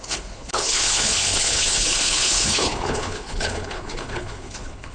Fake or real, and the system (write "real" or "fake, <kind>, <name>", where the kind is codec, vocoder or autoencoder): fake, codec, HILCodec